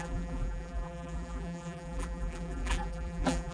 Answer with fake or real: fake